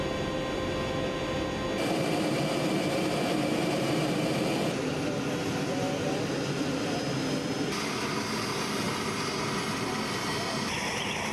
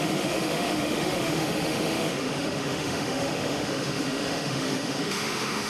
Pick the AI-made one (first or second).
second